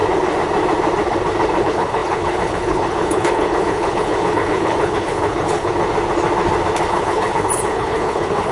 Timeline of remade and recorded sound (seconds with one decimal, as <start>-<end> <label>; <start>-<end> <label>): 0.0-1.6 recorded; 1.6-5.7 remade; 5.7-6.9 recorded; 6.9-8.5 remade